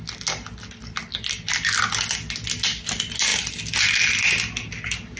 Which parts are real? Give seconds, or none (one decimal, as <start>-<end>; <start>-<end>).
0.0-5.2